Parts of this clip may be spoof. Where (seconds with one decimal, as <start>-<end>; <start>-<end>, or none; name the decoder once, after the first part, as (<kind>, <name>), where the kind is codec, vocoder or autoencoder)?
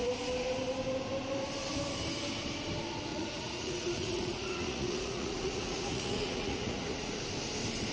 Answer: 3.1-7.2 (vocoder, Vocos)